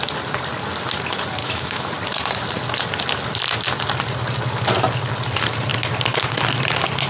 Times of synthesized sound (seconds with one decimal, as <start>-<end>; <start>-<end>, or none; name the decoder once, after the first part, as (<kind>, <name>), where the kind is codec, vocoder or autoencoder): 1.4-1.9 (autoencoder, DAC-VAE)

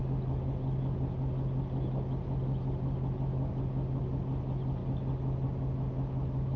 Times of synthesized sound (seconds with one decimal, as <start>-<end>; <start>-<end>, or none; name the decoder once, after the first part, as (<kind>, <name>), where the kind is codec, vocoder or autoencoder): none

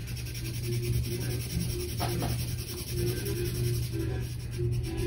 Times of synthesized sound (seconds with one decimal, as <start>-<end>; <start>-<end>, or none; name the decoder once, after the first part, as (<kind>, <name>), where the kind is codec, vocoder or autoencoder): none

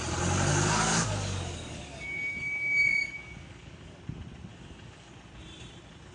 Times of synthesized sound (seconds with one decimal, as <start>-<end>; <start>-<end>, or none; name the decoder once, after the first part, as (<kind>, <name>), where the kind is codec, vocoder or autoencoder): 0.5-4.0 (codec, DAC); 4.5-5.1

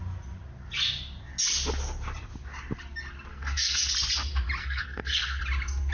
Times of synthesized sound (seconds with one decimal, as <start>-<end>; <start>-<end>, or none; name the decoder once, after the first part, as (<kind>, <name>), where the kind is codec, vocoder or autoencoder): 3.3-3.9 (codec, SNAC); 4.6-5.4

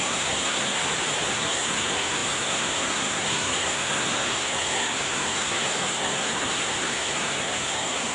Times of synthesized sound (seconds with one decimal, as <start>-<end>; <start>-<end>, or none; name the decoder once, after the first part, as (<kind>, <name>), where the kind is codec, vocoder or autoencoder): 0.0-0.8 (codec, SNAC); 1.3-8.1

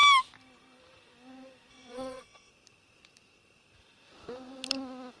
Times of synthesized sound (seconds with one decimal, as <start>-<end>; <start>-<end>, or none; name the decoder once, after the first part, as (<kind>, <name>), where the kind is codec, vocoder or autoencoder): 1.7-2.5 (vocoder, WaveNeXt)

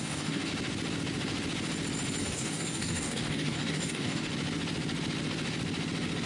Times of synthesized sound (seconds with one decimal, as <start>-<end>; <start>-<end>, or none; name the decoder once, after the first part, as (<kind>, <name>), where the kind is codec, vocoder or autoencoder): 0.0-0.5 (codec, DAC); 2.2-4.3